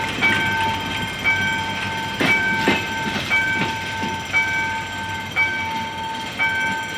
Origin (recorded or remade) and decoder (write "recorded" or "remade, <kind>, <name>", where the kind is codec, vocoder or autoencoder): recorded